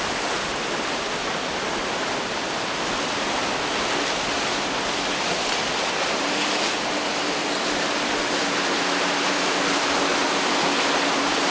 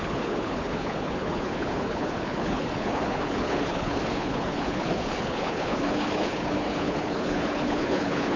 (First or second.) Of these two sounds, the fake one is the second